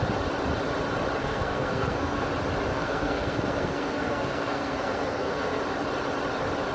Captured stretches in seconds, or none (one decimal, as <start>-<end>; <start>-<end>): 0.0-1.2; 2.3-2.7; 5.6-6.7

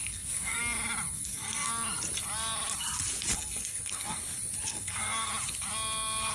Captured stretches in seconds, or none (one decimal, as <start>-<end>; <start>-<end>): 0.6-1.1; 1.7-3.3; 4.2-4.7; 5.3-6.3

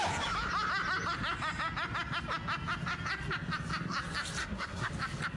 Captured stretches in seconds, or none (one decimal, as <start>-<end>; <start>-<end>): 0.0-4.4; 4.9-5.4